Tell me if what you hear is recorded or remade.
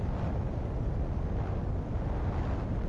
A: recorded